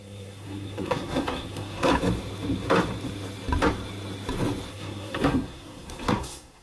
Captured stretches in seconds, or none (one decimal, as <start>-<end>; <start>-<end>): 1.9-4.7